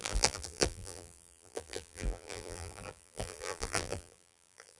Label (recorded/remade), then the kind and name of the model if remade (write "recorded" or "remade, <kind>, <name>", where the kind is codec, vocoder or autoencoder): remade, vocoder, BigVGAN v2